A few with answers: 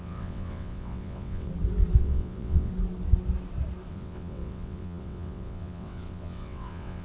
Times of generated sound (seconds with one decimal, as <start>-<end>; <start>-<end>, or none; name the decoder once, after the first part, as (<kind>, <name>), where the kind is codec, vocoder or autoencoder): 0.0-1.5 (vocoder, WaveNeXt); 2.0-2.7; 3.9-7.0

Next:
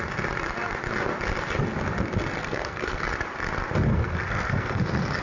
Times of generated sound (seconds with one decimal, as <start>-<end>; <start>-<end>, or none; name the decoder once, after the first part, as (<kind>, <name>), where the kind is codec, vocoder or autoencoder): 2.4-3.0 (codec, SNAC); 3.9-4.8

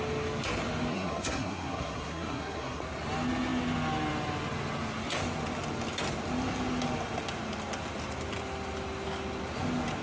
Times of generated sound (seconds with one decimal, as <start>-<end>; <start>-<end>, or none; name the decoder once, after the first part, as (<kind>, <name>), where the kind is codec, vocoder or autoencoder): 0.9-2.8 (codec, SNAC)

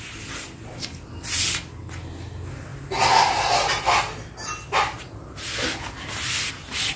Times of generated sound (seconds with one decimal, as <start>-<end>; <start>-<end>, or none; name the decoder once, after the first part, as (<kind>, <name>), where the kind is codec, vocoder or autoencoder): none

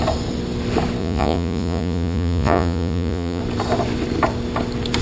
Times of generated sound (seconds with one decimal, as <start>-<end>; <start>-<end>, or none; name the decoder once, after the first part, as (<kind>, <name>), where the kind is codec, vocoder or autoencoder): 1.0-3.4 (vocoder, Vocos)